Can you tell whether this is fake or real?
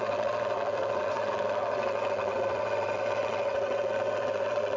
fake